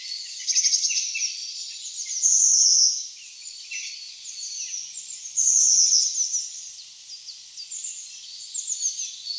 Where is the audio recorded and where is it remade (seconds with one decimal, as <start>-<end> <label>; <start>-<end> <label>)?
0.0-1.4 recorded; 1.4-1.9 remade; 1.9-9.4 recorded